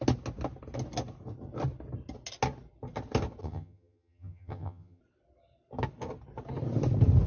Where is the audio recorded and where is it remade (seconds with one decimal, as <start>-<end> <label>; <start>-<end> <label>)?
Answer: 0.0-3.4 recorded; 3.4-5.0 remade; 5.0-7.3 recorded